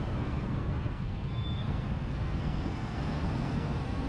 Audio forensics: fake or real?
fake